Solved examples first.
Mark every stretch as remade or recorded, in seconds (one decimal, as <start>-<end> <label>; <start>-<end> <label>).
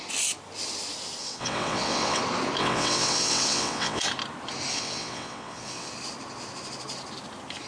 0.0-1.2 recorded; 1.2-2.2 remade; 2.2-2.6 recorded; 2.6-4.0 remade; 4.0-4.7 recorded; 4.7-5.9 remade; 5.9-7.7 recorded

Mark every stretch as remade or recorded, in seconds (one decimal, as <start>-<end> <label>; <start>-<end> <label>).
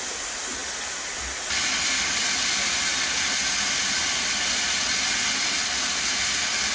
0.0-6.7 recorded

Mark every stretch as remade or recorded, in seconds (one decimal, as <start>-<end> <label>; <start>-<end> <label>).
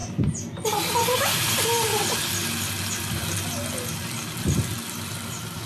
0.0-1.9 remade; 1.9-5.3 recorded; 5.3-5.7 remade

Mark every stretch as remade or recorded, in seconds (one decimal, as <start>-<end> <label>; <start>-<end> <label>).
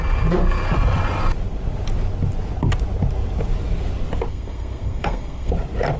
0.0-4.3 recorded; 4.3-5.5 remade; 5.5-6.0 recorded